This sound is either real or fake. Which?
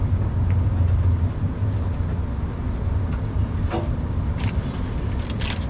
real